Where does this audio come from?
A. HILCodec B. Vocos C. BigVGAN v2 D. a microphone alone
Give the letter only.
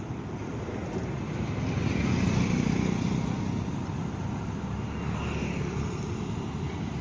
D